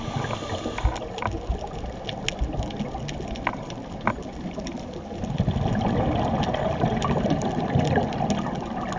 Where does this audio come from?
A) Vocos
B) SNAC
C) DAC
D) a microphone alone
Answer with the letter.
D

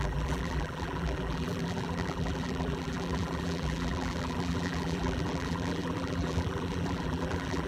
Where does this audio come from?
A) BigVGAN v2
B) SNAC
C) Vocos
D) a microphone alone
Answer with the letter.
A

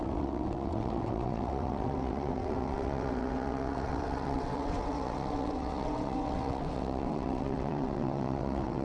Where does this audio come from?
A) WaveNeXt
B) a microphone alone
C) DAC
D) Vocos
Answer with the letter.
A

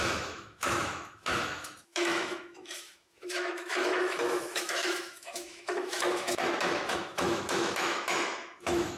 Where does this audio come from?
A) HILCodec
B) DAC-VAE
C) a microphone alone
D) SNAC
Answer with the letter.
B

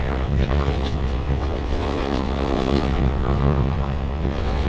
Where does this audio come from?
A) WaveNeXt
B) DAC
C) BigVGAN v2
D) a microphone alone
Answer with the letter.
A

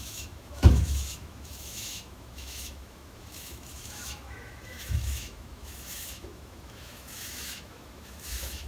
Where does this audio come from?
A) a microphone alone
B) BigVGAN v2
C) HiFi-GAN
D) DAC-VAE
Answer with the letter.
D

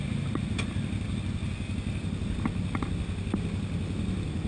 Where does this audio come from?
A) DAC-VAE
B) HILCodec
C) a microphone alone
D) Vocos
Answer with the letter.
C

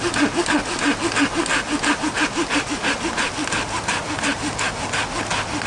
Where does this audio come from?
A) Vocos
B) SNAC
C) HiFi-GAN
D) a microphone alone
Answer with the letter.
D